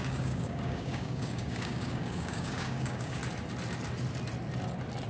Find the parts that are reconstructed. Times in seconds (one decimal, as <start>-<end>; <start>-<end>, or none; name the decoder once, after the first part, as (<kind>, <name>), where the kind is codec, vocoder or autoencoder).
0.0-3.2 (codec, DAC)